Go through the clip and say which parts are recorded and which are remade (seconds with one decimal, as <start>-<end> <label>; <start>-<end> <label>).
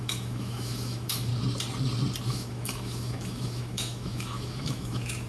0.0-1.3 remade; 1.3-2.2 recorded; 2.2-5.3 remade